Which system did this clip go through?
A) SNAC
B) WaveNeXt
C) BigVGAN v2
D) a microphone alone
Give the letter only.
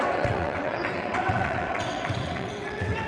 B